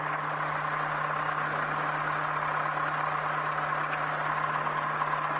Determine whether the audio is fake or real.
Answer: real